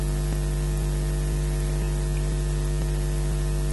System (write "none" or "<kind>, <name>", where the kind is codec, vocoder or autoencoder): none